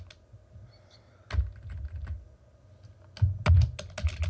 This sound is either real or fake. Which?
real